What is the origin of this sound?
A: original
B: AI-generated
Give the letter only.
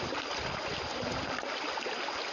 A